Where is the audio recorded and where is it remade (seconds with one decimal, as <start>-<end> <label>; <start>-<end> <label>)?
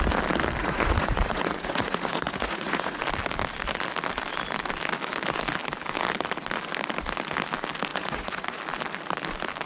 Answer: 0.0-0.6 recorded; 0.6-3.0 remade; 3.0-7.9 recorded; 7.9-8.6 remade; 8.6-9.7 recorded